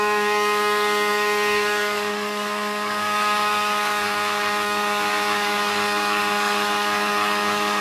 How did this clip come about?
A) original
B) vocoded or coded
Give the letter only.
B